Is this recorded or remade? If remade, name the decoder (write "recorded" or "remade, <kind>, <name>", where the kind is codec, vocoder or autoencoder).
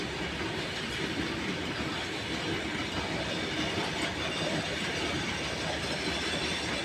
recorded